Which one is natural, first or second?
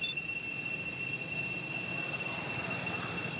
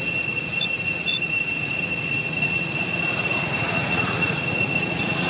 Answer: first